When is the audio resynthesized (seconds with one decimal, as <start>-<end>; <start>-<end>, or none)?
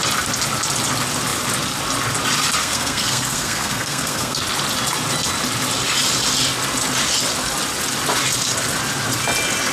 2.6-4.4